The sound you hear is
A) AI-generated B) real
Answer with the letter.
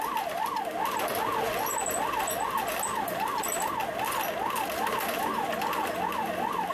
B